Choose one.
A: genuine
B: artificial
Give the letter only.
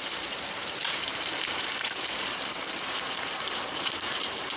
B